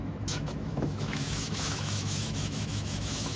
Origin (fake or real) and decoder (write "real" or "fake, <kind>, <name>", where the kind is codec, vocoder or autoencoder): fake, autoencoder, DAC-VAE